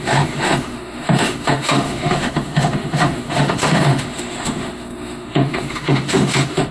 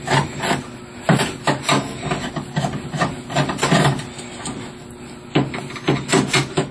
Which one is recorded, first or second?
second